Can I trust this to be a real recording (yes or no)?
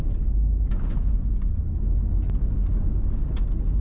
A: yes